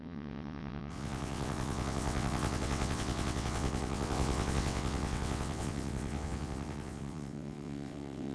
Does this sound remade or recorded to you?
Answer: remade